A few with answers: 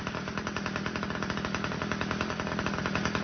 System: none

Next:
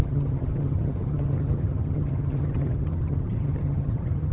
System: vocoder, HiFi-GAN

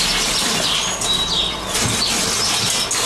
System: none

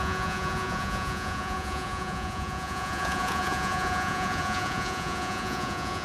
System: vocoder, Vocos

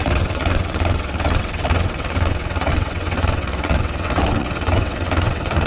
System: vocoder, WaveNeXt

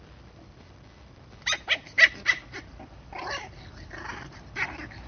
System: vocoder, BigVGAN v2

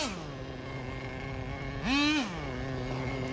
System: none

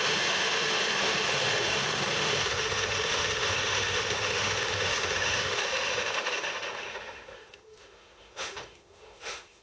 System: autoencoder, DAC-VAE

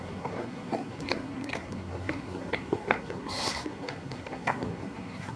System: codec, SNAC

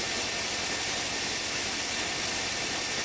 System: none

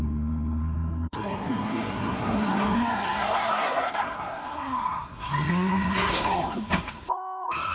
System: codec, SNAC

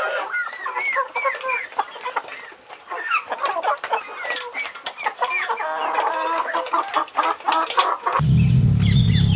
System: none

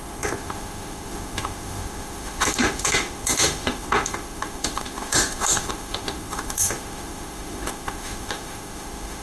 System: autoencoder, DAC-VAE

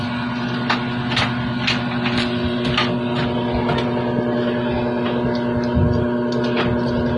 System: none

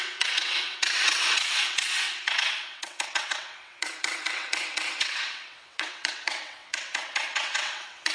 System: vocoder, WaveNeXt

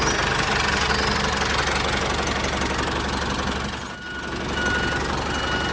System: none